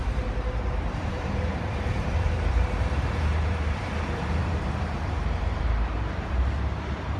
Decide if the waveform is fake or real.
fake